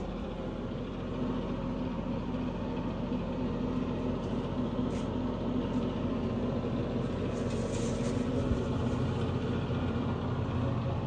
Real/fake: real